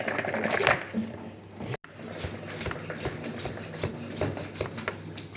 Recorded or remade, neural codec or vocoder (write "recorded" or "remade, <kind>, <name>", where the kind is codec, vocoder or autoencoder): recorded